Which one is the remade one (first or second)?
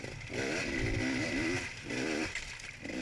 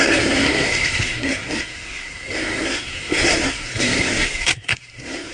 second